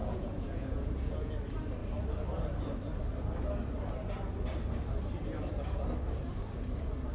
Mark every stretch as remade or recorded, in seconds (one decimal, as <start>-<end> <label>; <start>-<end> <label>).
0.0-1.3 remade; 1.3-7.1 recorded